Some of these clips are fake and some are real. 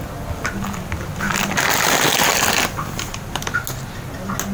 real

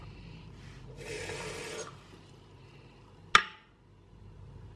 real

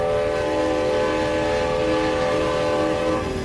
real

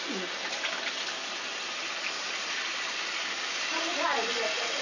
real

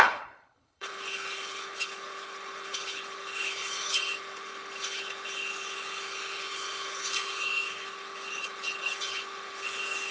fake